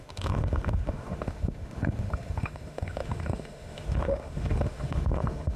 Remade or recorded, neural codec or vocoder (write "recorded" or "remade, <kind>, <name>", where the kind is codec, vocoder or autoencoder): remade, autoencoder, DAC-VAE